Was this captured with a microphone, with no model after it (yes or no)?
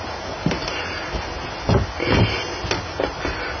yes